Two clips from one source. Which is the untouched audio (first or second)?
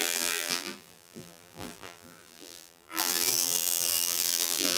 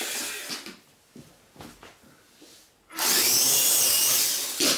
second